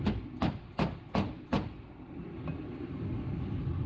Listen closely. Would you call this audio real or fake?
real